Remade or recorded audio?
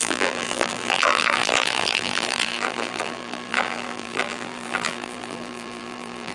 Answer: remade